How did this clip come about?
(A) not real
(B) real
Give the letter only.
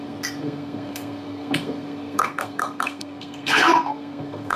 A